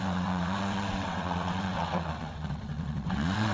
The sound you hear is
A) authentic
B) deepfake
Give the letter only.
B